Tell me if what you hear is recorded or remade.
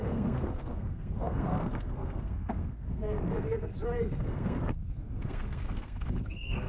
remade